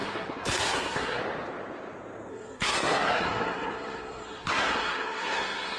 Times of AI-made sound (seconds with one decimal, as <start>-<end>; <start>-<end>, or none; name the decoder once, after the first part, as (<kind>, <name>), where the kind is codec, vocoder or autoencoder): 0.0-1.2 (codec, SNAC); 2.3-5.8